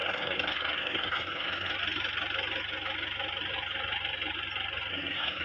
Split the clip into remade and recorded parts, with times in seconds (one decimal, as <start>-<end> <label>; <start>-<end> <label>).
0.0-1.7 remade; 1.7-4.9 recorded; 4.9-5.4 remade